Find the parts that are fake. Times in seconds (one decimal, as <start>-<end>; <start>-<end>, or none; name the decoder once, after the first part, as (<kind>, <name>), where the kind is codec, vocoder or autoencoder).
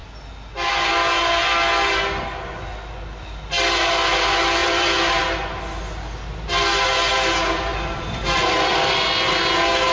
4.6-5.2 (vocoder, BigVGAN v2); 7.7-9.4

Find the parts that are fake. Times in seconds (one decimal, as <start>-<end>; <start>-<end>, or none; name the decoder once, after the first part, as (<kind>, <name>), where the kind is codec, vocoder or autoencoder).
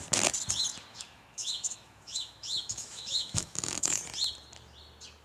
0.9-4.0 (autoencoder, DAC-VAE)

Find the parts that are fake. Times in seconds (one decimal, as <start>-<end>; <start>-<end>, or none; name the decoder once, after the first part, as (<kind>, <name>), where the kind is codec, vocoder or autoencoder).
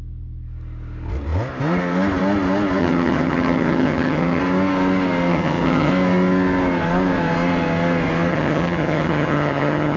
2.8-4.4 (vocoder, HiFi-GAN); 5.3-5.9; 8.3-10.0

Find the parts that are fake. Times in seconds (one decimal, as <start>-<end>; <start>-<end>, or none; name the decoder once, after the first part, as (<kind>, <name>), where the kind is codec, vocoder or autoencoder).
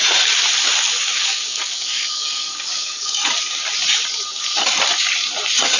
1.0-3.2 (codec, DAC)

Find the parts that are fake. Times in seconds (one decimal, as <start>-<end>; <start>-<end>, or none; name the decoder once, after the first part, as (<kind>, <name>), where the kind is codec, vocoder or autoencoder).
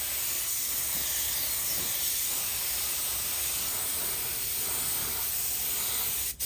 2.5-4.0 (vocoder, BigVGAN v2)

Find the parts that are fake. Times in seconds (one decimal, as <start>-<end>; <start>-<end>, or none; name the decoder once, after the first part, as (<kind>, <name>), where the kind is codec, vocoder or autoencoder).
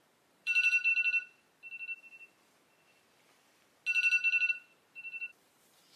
0.0-0.9 (vocoder, BigVGAN v2); 4.5-6.0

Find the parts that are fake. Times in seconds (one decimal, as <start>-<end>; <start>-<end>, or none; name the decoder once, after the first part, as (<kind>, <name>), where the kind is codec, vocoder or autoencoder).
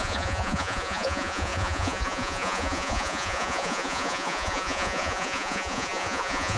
0.0-6.6 (vocoder, Vocos)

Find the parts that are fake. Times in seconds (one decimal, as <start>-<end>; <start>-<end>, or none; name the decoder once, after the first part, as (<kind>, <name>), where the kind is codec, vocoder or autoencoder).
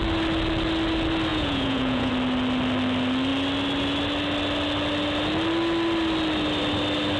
1.3-2.1 (vocoder, Vocos)